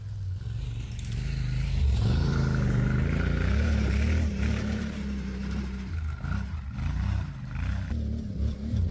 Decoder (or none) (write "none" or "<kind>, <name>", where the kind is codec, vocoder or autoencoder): none